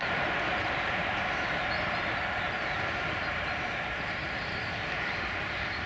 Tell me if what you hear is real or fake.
fake